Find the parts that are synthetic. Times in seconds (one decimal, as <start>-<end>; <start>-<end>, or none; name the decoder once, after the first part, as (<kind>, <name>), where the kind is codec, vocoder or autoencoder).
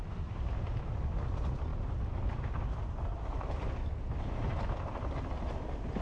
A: none